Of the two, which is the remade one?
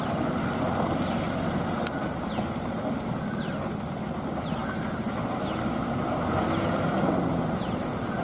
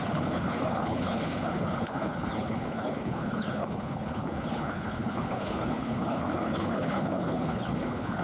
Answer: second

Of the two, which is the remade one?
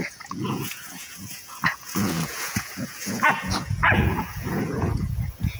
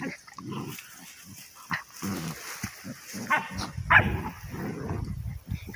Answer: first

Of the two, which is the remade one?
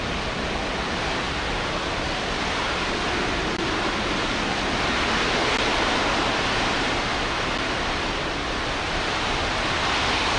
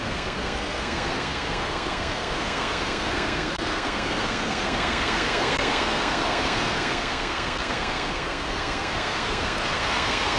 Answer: second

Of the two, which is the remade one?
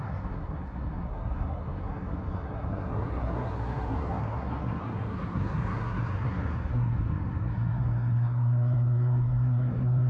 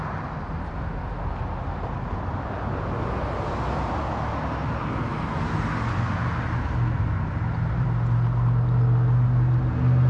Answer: first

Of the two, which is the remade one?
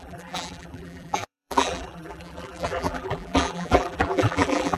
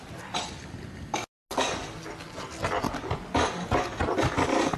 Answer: first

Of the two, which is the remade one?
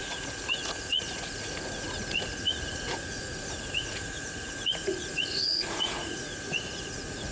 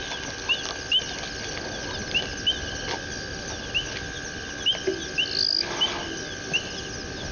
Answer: first